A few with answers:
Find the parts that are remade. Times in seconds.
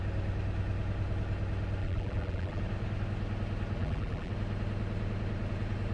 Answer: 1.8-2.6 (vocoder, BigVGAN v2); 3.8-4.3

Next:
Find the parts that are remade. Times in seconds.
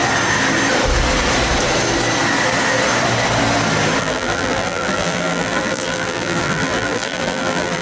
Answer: 4.0-7.8 (vocoder, BigVGAN v2)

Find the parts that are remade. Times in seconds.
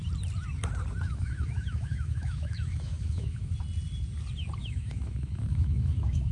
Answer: 1.1-3.5 (autoencoder, DAC-VAE); 4.6-6.3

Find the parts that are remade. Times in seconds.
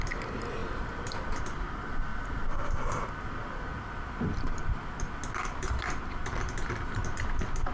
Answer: 0.0-6.2 (vocoder, BigVGAN v2); 6.7-7.7